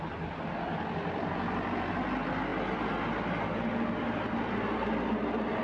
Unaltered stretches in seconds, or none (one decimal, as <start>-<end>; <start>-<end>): 0.0-5.6